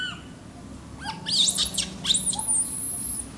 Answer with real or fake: real